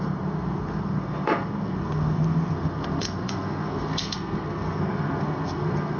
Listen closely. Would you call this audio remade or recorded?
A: remade